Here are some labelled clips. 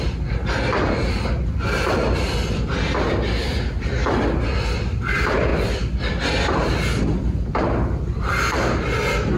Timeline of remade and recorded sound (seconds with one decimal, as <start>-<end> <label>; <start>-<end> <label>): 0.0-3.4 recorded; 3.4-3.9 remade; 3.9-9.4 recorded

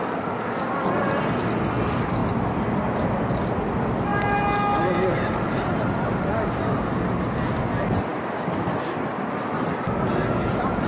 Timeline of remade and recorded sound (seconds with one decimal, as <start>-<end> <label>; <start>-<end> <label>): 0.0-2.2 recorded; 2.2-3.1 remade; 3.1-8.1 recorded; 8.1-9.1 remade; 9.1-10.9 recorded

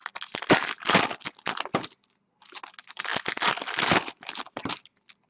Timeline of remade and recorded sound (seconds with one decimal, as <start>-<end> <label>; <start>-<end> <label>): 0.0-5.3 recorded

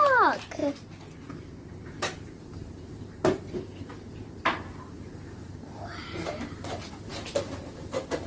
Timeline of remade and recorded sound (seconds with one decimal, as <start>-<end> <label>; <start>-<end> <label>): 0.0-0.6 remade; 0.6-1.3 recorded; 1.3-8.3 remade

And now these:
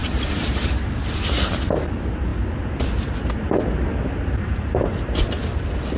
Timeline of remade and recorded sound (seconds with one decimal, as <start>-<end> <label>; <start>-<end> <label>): 0.0-0.7 remade; 0.7-6.0 recorded

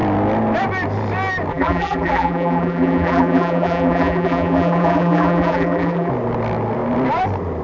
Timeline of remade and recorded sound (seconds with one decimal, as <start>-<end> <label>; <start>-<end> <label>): 0.0-1.5 recorded; 1.5-6.1 remade; 6.1-7.6 recorded

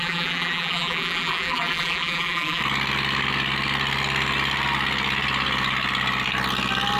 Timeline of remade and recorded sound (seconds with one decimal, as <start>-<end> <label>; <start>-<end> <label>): 0.0-2.6 remade; 2.6-7.0 recorded